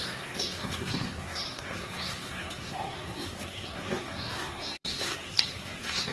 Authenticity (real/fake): fake